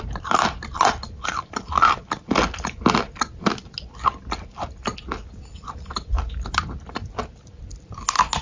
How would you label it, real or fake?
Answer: real